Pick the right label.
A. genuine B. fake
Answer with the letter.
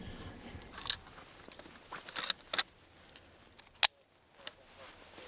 A